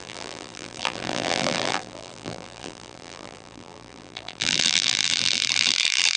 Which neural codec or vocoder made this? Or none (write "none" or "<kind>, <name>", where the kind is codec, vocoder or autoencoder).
vocoder, BigVGAN v2